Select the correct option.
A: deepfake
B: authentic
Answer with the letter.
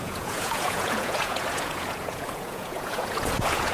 A